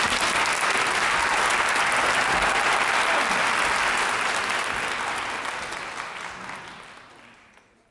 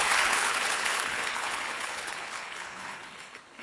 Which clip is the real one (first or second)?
first